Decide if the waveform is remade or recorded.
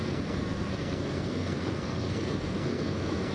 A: remade